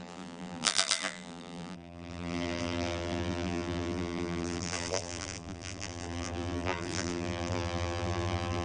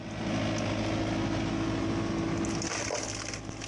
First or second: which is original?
second